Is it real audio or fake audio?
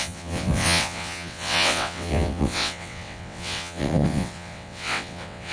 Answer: fake